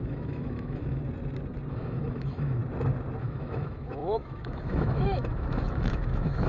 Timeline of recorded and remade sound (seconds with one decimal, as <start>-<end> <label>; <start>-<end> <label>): 0.0-1.0 remade; 1.0-1.7 recorded; 1.7-2.6 remade; 2.6-3.2 recorded; 3.2-6.5 remade